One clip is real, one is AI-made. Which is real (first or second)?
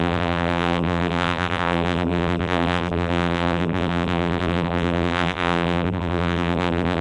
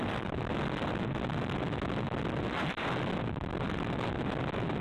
second